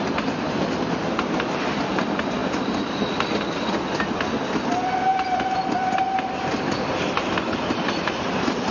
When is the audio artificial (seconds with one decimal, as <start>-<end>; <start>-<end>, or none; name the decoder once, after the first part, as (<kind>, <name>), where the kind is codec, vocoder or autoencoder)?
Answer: none